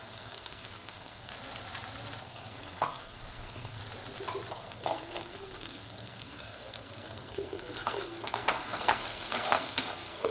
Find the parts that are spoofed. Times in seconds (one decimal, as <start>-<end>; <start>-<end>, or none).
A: 0.0-1.3; 2.2-3.8; 4.5-10.3